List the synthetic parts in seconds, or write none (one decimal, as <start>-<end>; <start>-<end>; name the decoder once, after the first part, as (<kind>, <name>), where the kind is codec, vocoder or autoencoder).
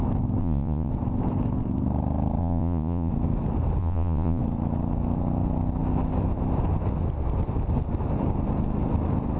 0.4-0.9 (vocoder, Vocos); 2.4-3.1; 3.8-4.4